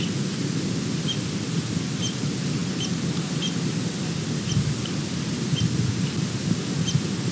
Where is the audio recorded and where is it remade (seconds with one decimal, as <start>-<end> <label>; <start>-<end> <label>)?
0.0-7.3 recorded